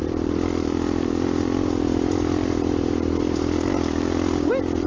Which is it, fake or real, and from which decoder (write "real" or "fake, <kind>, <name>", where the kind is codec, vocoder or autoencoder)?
real